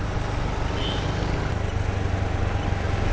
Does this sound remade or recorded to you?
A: recorded